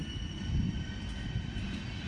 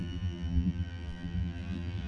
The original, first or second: first